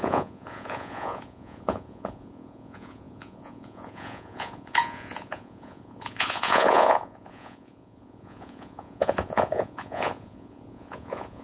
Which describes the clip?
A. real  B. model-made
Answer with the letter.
B